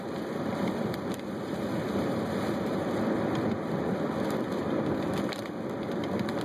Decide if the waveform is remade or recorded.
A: remade